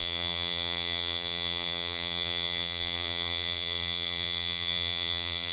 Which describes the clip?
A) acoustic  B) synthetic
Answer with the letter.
B